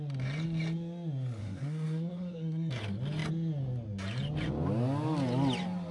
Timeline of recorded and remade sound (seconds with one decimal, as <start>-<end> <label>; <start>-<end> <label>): 0.0-1.4 recorded; 1.4-2.7 remade; 2.7-5.9 recorded